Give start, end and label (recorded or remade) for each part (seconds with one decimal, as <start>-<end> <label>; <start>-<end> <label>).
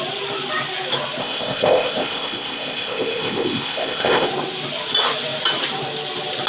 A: 0.0-1.2 recorded; 1.2-4.3 remade; 4.3-6.5 recorded